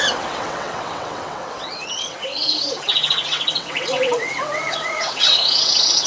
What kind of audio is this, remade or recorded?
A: remade